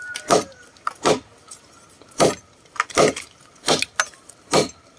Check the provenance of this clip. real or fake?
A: real